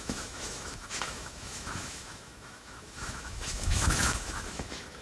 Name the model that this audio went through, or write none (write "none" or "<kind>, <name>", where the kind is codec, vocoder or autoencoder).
autoencoder, DAC-VAE